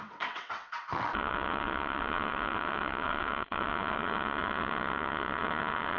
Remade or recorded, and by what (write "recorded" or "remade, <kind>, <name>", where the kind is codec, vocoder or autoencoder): remade, vocoder, WaveNeXt